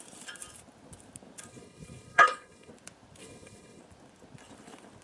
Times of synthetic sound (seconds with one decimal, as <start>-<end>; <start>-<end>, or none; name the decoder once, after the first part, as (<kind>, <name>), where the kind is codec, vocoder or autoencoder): 1.5-2.7 (codec, HILCodec); 3.2-3.8